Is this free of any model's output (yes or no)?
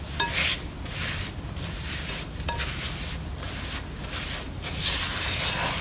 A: yes